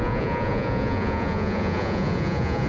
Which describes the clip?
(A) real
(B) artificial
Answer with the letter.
B